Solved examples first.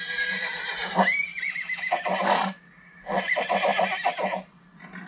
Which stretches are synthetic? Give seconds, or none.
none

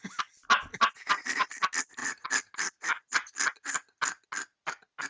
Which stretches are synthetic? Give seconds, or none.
none

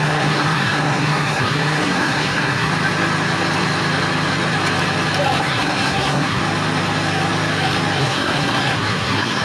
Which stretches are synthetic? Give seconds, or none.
0.0-2.7 (codec, SNAC); 5.4-6.4; 8.0-9.4

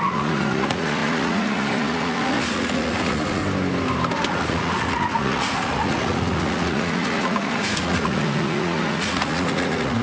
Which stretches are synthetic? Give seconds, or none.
0.0-3.4 (vocoder, Vocos); 4.3-10.0

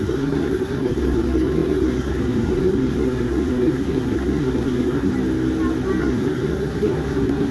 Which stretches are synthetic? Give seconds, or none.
0.0-5.1 (codec, SNAC); 6.0-7.5

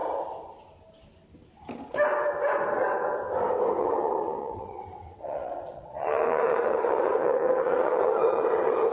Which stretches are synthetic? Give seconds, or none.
3.8-8.9 (vocoder, WaveNeXt)

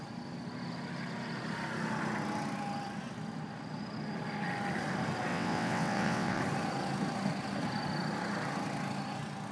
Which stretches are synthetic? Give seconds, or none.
5.3-6.4 (vocoder, WaveNeXt)

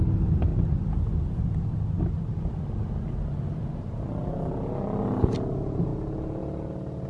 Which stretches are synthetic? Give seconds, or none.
none